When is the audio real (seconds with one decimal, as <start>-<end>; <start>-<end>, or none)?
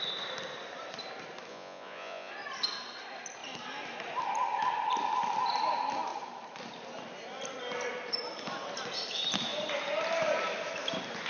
0.0-1.5; 2.3-11.3